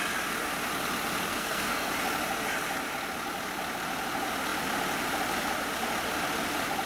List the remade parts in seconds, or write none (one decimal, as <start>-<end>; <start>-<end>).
1.3-1.9